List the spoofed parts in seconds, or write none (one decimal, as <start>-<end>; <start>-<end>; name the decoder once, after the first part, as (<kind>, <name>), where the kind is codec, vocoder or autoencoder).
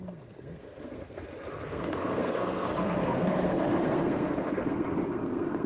0.0-1.2 (codec, SNAC); 1.7-5.7